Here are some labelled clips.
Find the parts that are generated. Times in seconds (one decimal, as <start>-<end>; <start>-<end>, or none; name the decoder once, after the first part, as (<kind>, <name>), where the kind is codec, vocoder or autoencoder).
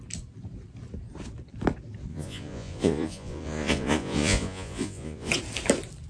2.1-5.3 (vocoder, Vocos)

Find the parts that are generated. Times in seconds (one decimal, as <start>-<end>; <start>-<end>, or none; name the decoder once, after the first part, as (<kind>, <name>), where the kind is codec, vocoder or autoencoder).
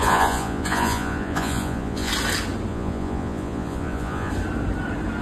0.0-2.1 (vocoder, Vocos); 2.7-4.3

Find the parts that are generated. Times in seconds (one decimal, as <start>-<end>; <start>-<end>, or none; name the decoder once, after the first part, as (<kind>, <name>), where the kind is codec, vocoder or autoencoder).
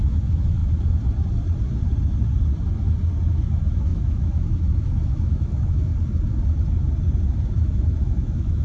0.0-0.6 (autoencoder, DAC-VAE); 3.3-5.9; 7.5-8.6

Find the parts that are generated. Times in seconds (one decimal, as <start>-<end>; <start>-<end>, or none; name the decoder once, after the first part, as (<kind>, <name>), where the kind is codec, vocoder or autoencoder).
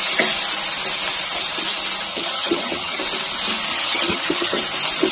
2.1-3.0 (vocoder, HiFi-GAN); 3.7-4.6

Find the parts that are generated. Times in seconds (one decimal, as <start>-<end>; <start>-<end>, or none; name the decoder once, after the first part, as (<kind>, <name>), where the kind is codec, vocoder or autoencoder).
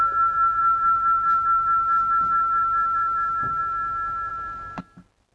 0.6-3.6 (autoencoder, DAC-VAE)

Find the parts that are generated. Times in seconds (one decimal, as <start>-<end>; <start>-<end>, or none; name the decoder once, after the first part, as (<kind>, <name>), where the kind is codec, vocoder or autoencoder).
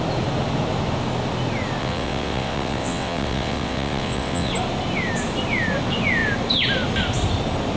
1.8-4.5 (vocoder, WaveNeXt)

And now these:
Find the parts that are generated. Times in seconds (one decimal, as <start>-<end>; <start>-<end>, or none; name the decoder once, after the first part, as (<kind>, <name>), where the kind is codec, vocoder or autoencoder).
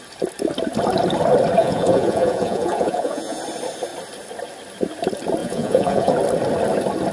1.6-3.4 (vocoder, Vocos); 5.4-6.1